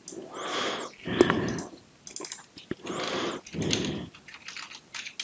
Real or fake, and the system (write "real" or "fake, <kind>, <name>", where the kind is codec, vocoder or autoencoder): real